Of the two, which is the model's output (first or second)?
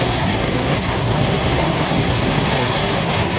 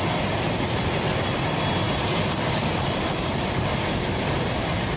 first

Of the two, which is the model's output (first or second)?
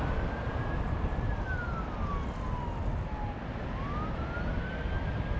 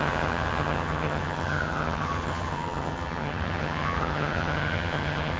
second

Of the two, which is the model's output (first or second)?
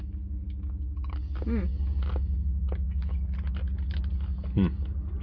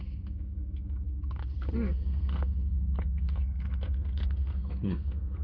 second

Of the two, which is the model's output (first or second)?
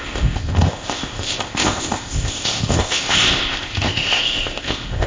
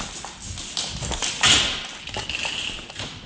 first